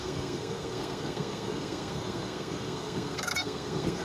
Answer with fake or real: fake